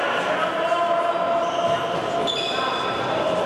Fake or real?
real